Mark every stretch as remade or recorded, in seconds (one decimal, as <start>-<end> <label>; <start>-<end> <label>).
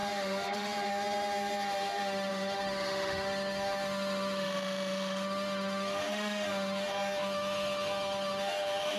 0.0-9.0 remade